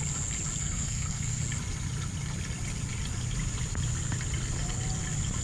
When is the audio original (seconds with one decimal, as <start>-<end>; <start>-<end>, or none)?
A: 0.0-0.6; 1.4-5.4